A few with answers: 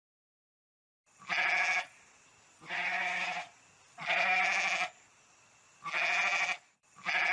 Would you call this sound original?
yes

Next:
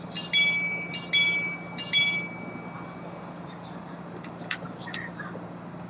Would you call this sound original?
yes